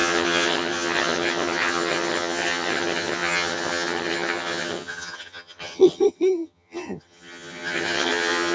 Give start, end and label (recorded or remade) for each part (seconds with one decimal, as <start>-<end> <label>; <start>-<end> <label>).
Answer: 0.0-8.5 remade